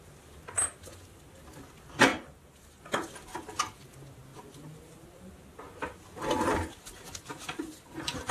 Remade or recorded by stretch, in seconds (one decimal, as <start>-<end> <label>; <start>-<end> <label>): 0.0-2.1 recorded; 2.1-2.8 remade; 2.8-4.3 recorded; 4.3-5.3 remade; 5.3-7.3 recorded; 7.3-8.3 remade